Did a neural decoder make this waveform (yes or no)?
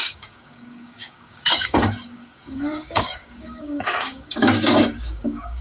yes